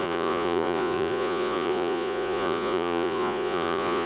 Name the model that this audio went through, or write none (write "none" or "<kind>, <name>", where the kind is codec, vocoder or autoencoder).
vocoder, Vocos